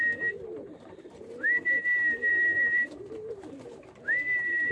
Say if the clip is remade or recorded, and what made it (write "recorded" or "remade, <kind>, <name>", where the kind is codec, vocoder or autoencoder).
remade, vocoder, BigVGAN v2